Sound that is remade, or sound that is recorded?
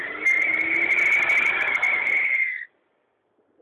recorded